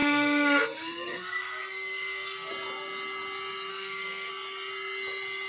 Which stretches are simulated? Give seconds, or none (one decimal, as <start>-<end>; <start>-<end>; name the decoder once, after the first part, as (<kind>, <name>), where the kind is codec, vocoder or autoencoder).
0.0-2.5 (codec, SNAC); 3.7-4.3